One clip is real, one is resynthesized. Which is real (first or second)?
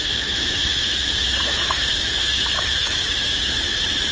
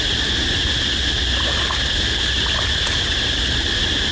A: second